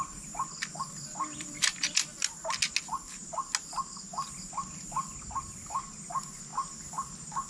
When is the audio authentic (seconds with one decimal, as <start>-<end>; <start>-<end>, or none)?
0.0-7.5

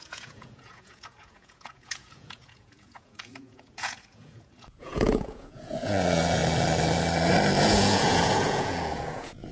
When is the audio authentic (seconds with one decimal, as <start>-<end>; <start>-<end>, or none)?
6.4-7.6

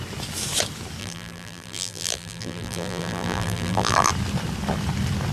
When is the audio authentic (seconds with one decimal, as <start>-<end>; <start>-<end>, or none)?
0.0-1.0; 4.1-5.3

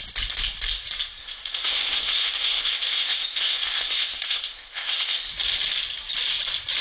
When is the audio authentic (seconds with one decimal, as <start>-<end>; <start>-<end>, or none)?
0.0-1.2; 5.3-6.8

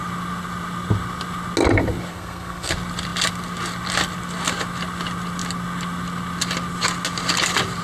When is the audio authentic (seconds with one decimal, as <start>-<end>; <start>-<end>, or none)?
0.0-2.1; 2.7-7.8

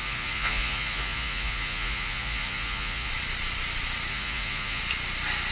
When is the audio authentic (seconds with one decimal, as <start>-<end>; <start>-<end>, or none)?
3.1-4.1; 4.8-5.5

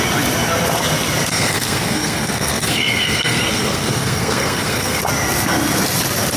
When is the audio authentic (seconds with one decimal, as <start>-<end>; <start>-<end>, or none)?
0.0-1.3; 5.0-6.4

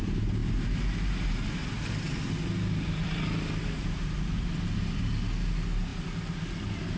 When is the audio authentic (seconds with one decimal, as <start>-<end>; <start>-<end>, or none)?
0.0-7.0